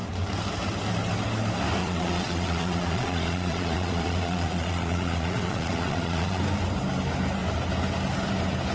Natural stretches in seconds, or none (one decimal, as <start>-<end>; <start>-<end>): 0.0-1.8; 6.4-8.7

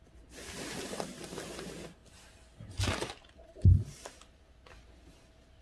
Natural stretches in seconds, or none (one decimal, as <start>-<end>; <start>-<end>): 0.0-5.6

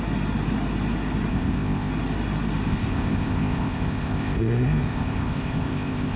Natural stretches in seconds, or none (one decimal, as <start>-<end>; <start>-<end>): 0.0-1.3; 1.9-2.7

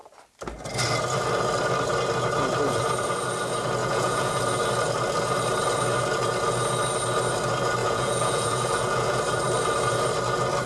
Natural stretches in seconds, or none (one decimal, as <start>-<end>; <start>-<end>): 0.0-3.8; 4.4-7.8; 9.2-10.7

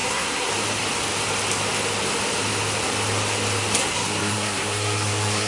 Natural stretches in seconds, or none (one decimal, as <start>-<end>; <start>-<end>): 0.5-3.8